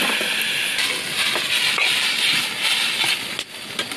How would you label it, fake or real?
real